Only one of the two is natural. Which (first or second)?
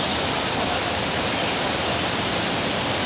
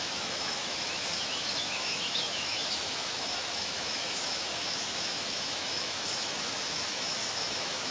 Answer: first